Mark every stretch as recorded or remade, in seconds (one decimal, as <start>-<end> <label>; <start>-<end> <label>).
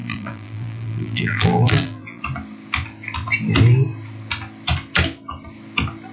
0.0-2.2 remade; 2.2-6.1 recorded